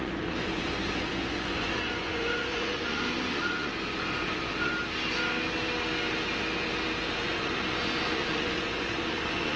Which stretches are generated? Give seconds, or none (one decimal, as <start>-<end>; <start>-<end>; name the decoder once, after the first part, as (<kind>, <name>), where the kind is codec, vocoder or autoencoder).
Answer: 0.0-4.7 (vocoder, Vocos); 7.1-9.6

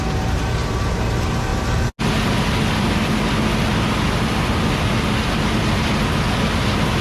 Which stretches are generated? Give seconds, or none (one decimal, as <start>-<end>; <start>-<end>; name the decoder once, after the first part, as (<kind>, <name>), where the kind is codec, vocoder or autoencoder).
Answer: none

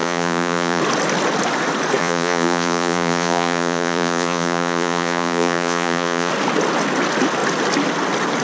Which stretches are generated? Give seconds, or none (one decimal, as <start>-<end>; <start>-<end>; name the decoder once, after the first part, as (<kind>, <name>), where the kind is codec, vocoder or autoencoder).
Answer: 0.0-0.8 (vocoder, Vocos); 2.0-6.3

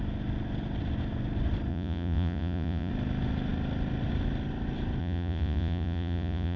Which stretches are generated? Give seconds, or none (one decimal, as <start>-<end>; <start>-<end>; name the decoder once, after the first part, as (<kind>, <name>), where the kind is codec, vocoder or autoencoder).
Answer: 1.7-2.9 (vocoder, Vocos); 5.0-6.6

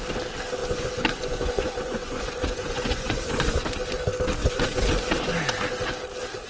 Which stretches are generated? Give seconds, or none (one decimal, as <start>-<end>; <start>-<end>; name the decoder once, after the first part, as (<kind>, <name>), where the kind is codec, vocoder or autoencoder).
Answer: 0.6-3.6 (vocoder, Vocos); 4.4-4.9